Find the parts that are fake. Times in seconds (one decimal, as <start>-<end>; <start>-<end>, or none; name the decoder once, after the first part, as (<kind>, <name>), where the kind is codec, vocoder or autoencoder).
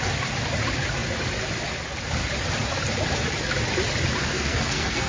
4.2-5.1 (codec, SNAC)